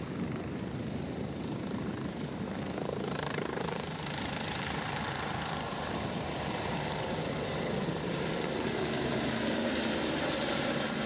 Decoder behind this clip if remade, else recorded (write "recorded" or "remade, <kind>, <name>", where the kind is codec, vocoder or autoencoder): remade, vocoder, BigVGAN v2